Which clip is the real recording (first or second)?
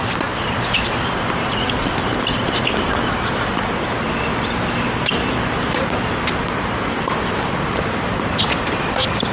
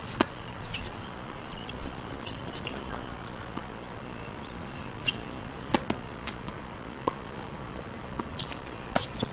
first